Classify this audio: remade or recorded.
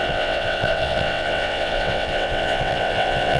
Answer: remade